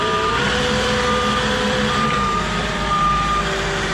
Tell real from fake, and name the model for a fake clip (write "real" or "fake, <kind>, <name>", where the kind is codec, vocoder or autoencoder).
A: fake, vocoder, BigVGAN v2